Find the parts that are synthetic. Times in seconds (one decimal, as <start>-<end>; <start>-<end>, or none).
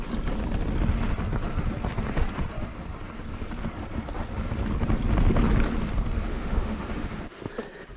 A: 6.3-7.5